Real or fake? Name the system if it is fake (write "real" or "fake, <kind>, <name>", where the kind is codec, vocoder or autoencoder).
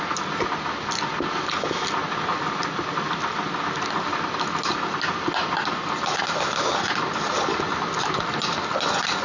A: real